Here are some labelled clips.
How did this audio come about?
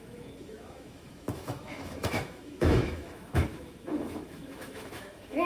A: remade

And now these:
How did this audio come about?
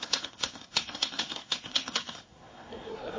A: remade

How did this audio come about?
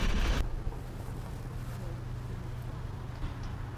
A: recorded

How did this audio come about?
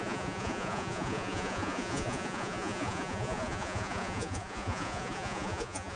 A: remade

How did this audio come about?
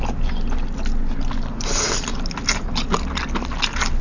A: recorded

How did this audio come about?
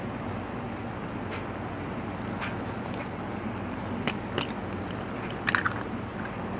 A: recorded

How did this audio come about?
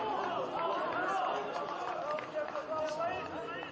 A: recorded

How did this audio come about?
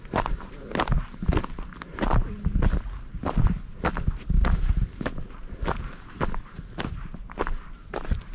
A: recorded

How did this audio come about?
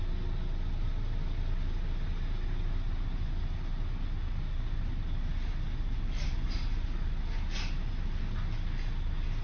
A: recorded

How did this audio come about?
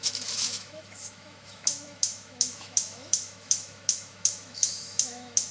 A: remade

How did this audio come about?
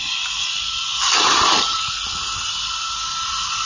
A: recorded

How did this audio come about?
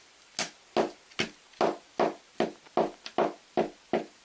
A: recorded